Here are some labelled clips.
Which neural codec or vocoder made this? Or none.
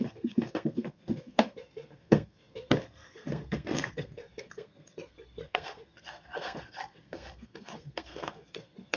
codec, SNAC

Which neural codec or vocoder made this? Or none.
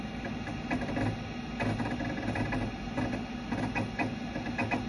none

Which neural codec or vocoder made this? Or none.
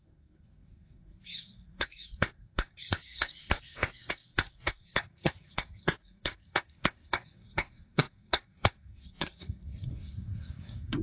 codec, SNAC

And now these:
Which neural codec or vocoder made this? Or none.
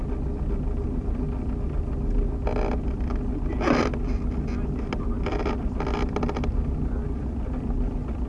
none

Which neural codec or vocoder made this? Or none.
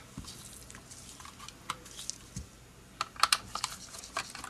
none